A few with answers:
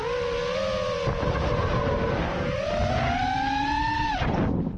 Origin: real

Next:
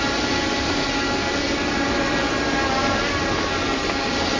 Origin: real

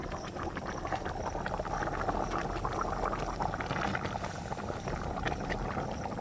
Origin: real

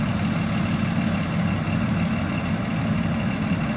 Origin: real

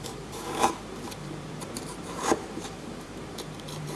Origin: fake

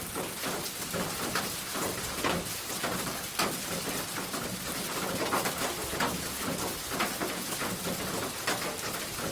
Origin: fake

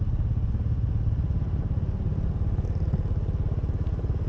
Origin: real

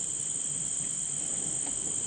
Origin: real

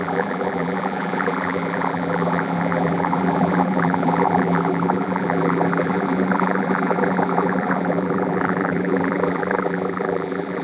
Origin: fake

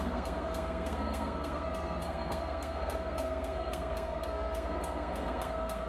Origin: fake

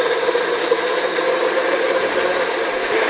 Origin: fake